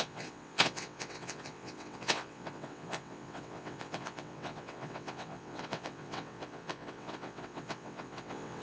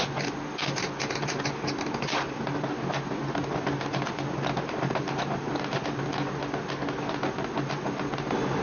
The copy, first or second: first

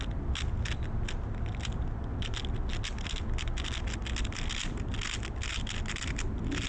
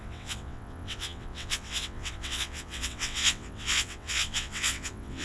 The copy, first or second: second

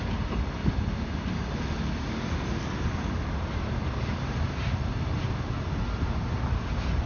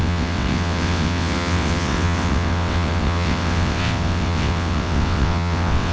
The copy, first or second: second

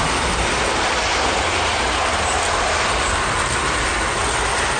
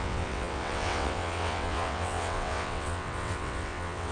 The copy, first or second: second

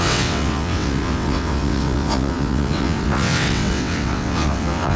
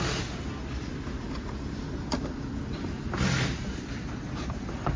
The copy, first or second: first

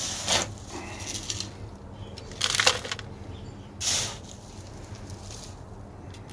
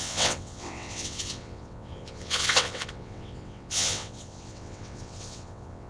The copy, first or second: second